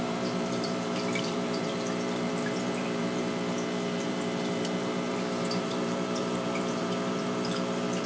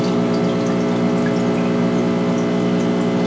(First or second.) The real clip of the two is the second